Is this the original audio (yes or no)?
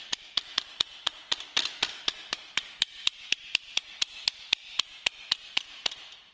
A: yes